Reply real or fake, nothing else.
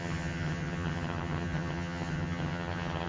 fake